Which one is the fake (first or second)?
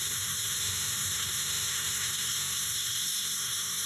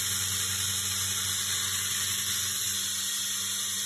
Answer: first